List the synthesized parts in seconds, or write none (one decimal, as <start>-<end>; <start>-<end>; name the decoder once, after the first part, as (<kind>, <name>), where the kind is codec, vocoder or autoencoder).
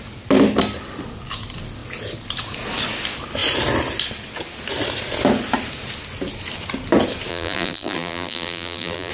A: 7.3-9.1 (vocoder, BigVGAN v2)